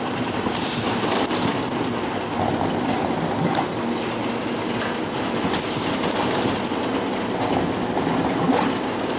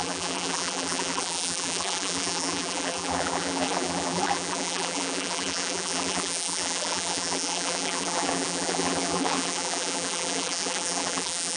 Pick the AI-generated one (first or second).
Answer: second